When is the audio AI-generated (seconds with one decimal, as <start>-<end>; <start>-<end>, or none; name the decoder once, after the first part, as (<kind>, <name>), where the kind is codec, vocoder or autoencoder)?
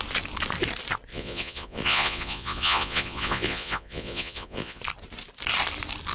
1.1-4.8 (vocoder, Vocos)